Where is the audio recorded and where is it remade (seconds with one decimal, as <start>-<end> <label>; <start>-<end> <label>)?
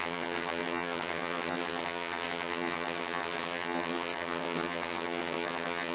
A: 0.0-5.9 remade